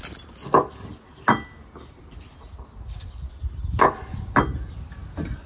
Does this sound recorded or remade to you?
recorded